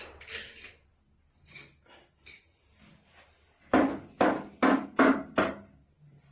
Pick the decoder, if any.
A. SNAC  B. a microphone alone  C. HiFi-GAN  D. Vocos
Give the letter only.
B